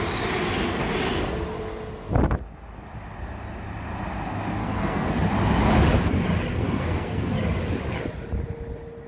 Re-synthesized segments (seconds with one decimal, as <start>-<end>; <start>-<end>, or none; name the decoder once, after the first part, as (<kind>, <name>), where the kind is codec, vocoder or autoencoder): 4.6-5.1 (codec, SNAC); 6.5-7.3